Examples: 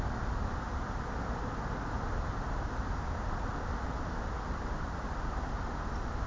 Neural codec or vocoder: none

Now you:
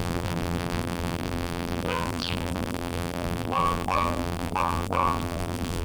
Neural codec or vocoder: vocoder, BigVGAN v2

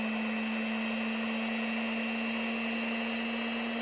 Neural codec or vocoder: none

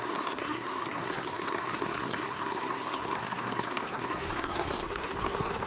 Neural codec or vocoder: codec, SNAC